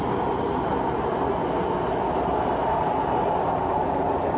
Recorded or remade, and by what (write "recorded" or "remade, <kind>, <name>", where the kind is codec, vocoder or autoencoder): recorded